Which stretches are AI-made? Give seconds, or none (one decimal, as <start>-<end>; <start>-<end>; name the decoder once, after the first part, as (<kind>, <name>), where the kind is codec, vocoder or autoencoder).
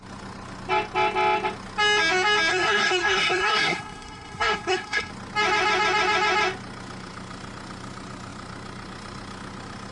2.5-5.1 (codec, SNAC)